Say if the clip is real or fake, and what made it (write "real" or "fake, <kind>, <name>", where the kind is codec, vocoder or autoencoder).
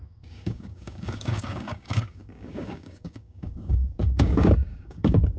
fake, codec, DAC